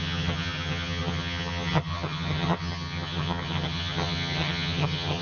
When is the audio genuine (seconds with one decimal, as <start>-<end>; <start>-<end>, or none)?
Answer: none